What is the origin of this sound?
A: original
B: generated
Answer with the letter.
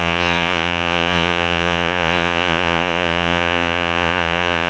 B